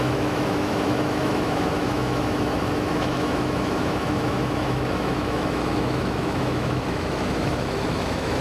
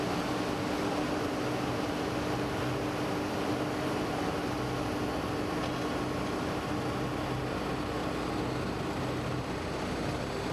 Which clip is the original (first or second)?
second